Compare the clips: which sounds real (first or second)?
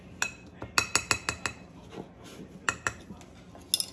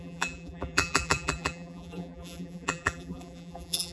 first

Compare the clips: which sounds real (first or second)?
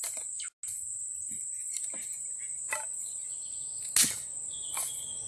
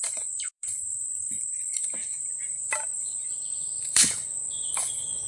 first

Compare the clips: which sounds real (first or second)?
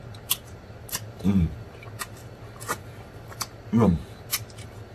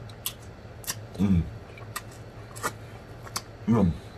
second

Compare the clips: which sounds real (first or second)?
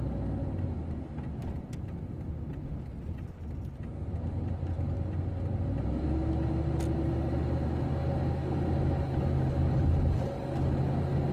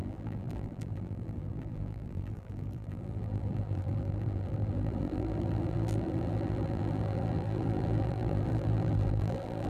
first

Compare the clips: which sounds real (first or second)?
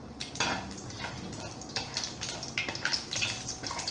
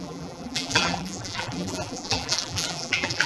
first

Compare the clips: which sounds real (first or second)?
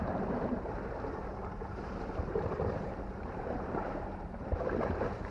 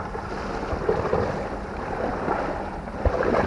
second